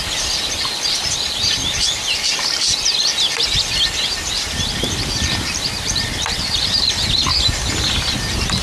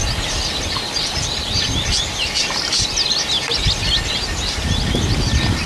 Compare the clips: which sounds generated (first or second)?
first